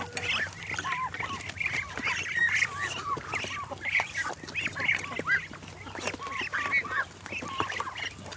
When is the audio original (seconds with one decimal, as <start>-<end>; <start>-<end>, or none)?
0.0-8.4